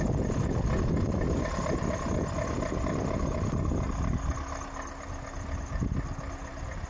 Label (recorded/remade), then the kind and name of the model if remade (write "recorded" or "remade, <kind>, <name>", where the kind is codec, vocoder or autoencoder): recorded